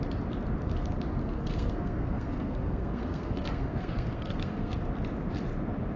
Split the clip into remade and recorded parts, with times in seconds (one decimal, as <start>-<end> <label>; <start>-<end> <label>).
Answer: 0.0-1.2 recorded; 1.2-4.8 remade; 4.8-6.0 recorded

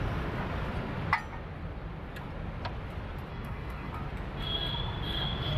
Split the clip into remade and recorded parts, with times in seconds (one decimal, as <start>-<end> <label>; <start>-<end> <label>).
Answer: 0.0-3.3 recorded; 3.3-3.9 remade; 3.9-5.6 recorded

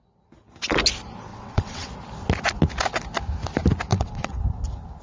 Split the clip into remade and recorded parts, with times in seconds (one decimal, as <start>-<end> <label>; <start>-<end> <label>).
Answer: 0.0-1.3 recorded; 1.3-1.9 remade; 1.9-3.9 recorded; 3.9-4.4 remade; 4.4-5.0 recorded

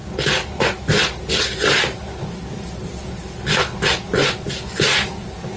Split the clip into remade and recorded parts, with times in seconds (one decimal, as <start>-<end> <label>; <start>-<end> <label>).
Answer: 0.0-5.6 recorded

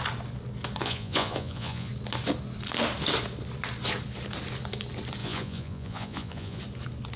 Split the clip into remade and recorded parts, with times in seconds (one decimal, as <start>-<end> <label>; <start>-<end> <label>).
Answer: 0.0-0.8 recorded; 0.8-1.9 remade; 1.9-5.2 recorded; 5.2-6.6 remade; 6.6-7.2 recorded

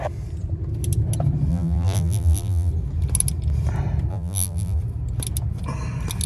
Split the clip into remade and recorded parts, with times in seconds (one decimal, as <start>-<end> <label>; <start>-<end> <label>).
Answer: 0.0-1.5 recorded; 1.5-2.7 remade; 2.7-4.1 recorded; 4.1-4.8 remade; 4.8-6.3 recorded